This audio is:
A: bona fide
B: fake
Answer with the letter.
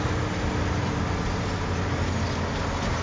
A